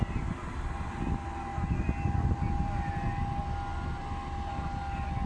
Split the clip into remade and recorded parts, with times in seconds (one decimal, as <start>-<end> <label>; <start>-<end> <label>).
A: 0.0-5.3 recorded